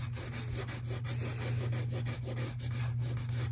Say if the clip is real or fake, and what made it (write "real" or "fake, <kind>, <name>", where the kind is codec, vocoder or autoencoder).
real